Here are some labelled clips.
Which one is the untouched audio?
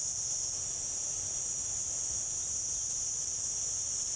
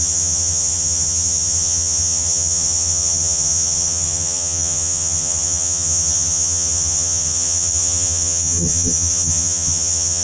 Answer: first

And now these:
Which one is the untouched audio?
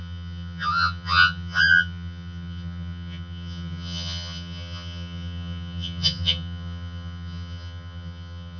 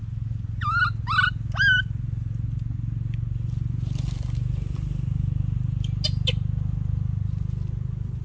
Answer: second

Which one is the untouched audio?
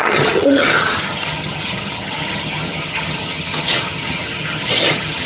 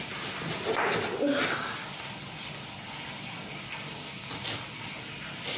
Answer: second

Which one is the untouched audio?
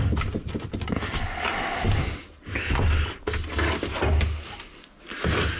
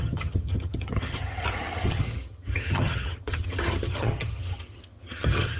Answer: first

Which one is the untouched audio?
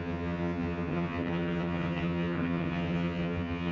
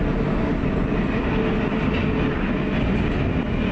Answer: second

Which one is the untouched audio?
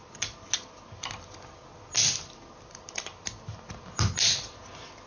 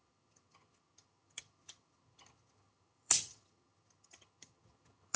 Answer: first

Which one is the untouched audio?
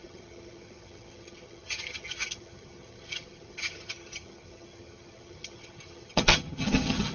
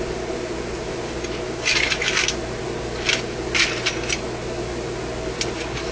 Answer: second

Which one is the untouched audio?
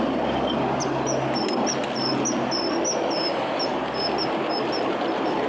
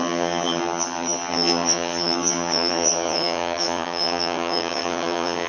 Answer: first